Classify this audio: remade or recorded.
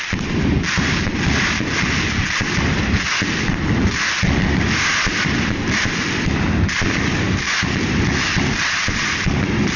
remade